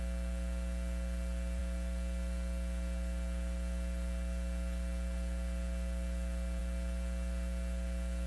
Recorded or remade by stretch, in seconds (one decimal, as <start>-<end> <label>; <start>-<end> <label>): 0.0-8.3 recorded